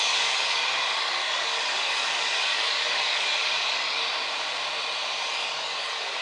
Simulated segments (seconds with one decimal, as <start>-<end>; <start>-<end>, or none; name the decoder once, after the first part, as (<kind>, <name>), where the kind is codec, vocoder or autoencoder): 0.0-4.0 (codec, DAC); 5.3-6.2